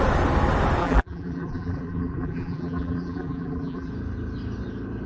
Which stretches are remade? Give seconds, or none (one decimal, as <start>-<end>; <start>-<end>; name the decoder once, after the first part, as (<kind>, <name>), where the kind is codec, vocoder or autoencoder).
0.8-3.9 (vocoder, BigVGAN v2)